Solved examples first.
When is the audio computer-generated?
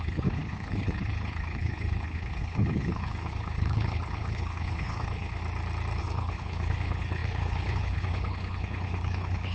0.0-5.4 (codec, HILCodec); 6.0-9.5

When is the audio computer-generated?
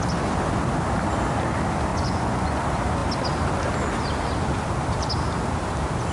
1.9-2.6 (vocoder, Vocos)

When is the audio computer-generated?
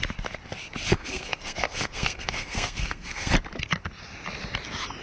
0.9-3.3 (codec, SNAC)